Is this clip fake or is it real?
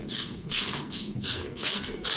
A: fake